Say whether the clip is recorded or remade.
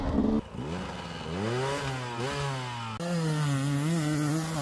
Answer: recorded